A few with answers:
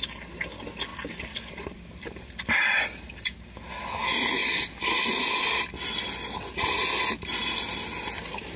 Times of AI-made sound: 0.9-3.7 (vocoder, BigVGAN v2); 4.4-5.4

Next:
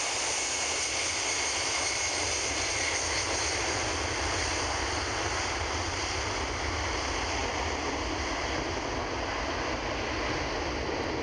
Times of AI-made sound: 7.4-8.3 (vocoder, BigVGAN v2)

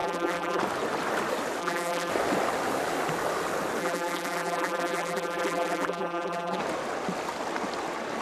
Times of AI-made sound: 0.0-0.6 (vocoder, BigVGAN v2); 1.6-2.1; 3.8-6.6

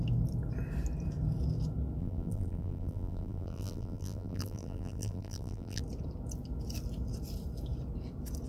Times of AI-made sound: 2.0-5.8 (vocoder, BigVGAN v2)

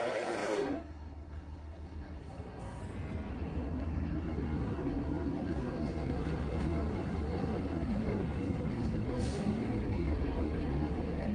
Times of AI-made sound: 0.0-2.8 (codec, SNAC); 3.3-11.3

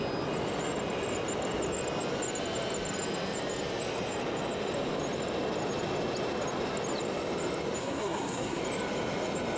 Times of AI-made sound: 7.8-8.6 (codec, SNAC)

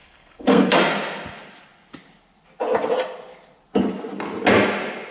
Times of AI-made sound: 0.0-0.7 (codec, SNAC)

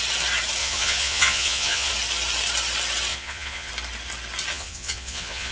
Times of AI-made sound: 0.6-1.9 (vocoder, Vocos); 3.1-3.7; 4.5-5.5